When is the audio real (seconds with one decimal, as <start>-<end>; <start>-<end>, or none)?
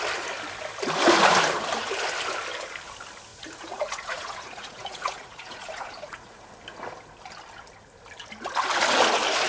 0.0-3.3; 6.4-9.5